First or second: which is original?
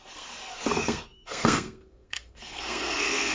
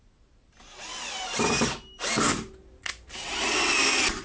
second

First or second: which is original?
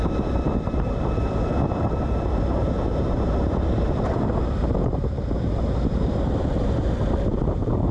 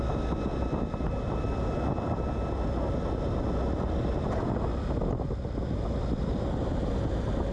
second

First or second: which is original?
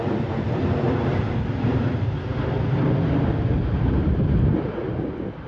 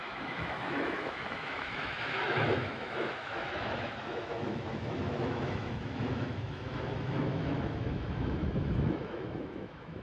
first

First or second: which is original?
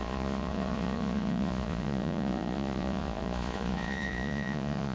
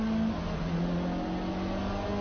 second